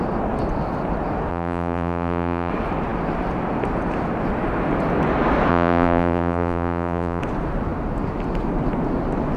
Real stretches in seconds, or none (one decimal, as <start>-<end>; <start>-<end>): 0.0-1.3; 2.5-5.5; 7.2-9.4